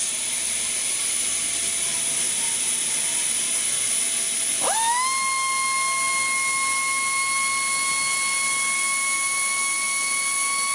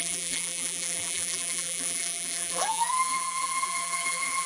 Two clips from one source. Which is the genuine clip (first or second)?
first